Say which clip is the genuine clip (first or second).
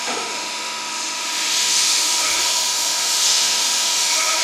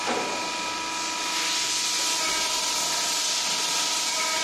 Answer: second